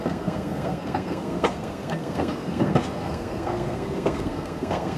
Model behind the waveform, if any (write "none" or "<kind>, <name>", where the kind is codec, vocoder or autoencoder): codec, SNAC